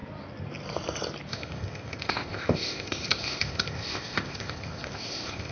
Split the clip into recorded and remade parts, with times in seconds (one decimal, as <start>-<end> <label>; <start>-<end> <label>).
0.0-1.3 recorded; 1.3-5.5 remade